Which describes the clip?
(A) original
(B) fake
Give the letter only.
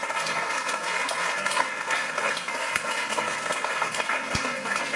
B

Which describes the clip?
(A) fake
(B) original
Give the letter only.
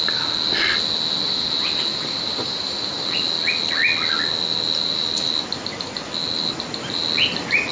B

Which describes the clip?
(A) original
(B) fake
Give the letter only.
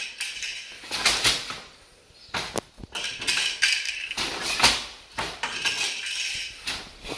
A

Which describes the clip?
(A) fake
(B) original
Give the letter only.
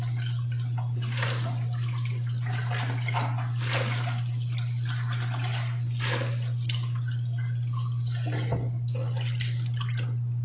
B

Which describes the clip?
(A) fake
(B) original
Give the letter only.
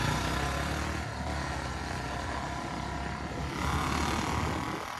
B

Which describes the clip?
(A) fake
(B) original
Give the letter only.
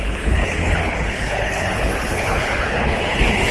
A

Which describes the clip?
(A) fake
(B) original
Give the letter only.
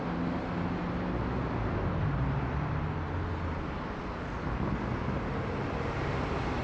B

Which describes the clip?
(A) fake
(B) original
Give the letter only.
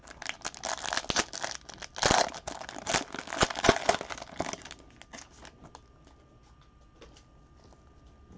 B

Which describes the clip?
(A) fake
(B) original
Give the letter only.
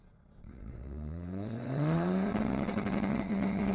A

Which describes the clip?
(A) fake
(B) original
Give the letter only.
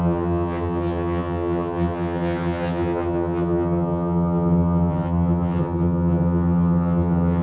A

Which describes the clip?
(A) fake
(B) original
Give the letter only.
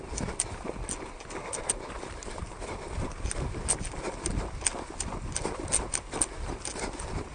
B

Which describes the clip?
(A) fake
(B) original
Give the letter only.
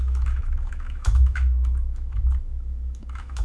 A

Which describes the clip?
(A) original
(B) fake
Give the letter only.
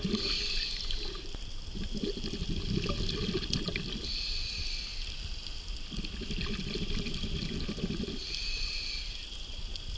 A